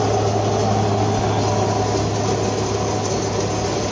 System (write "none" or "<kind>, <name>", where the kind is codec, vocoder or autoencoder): none